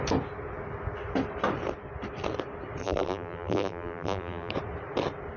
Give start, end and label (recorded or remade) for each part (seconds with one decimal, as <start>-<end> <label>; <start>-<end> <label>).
0.0-2.8 recorded; 2.8-4.5 remade; 4.5-5.4 recorded